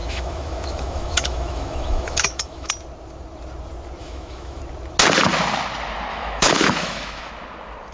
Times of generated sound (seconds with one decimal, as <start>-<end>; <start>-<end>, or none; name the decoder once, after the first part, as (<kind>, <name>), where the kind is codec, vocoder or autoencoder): 0.0-2.7 (autoencoder, DAC-VAE); 4.0-4.6; 6.1-7.3